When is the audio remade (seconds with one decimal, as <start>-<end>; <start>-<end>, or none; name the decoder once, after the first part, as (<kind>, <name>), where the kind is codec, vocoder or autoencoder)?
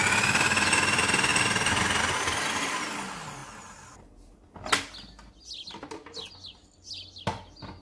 none